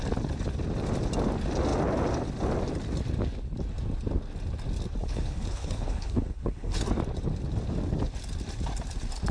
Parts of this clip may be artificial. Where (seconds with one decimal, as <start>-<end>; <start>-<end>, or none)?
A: 5.0-6.8